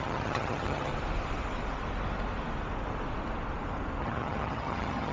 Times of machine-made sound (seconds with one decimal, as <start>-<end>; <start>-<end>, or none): 0.0-0.9; 4.0-5.1